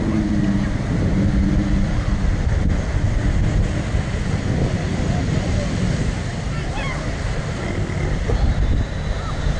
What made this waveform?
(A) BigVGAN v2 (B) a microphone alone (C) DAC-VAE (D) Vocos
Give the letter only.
B